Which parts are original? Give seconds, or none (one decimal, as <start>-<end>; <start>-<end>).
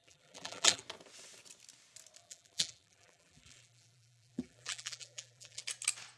0.8-2.2; 5.6-6.2